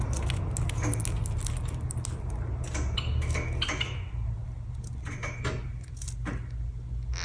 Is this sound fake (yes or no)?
no